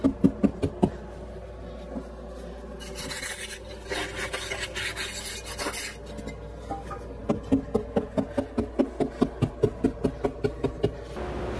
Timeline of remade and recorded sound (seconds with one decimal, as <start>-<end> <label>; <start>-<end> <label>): 0.0-11.6 recorded